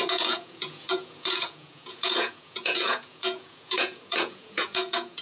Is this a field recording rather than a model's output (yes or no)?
no